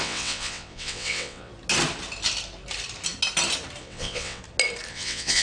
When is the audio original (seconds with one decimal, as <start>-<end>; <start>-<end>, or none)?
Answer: 1.5-3.8; 4.4-4.9